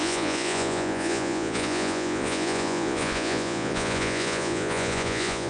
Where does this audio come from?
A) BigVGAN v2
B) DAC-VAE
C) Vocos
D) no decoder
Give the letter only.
C